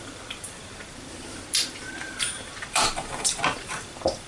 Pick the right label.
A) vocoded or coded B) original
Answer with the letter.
A